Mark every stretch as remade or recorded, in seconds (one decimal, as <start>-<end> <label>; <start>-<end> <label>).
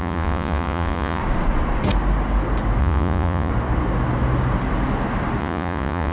0.0-1.2 remade; 1.2-2.8 recorded; 2.8-3.5 remade; 3.5-5.4 recorded; 5.4-6.1 remade